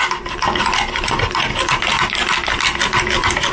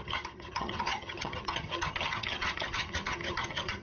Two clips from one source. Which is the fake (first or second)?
second